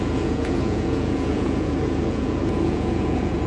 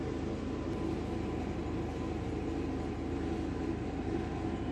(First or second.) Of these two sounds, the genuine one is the second